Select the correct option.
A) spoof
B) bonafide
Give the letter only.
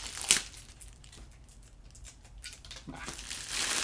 B